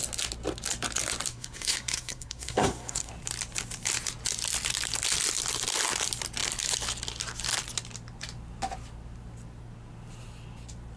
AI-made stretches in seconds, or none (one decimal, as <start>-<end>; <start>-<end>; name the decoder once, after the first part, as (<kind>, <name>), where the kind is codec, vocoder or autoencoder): 1.3-3.1 (codec, SNAC)